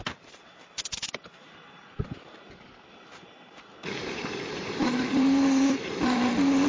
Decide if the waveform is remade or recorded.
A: remade